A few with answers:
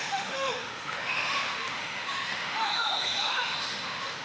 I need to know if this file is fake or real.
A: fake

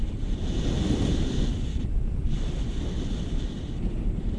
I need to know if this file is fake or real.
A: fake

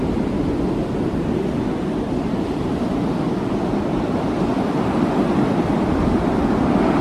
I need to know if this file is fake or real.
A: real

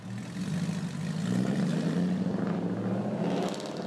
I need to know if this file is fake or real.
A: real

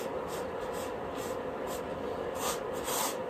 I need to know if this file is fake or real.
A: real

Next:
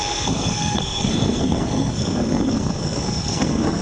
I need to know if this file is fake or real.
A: fake